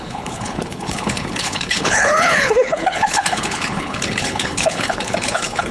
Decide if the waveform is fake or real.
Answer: fake